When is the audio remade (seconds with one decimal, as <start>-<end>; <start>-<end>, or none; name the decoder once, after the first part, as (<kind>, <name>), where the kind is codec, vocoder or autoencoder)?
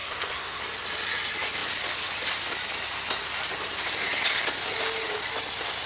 0.0-0.6 (codec, SNAC)